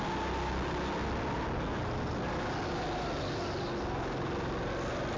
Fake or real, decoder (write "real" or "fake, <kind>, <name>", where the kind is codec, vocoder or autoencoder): real